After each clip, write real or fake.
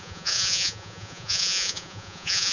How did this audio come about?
fake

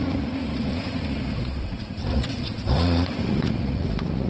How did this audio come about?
fake